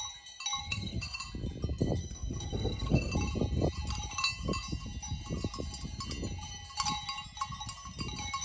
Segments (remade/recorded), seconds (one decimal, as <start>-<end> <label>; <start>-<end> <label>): 0.0-0.6 recorded; 0.6-1.2 remade; 1.2-2.0 recorded; 2.0-3.1 remade; 3.1-8.4 recorded